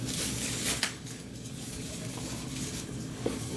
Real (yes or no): no